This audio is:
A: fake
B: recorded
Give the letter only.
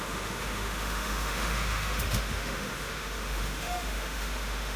A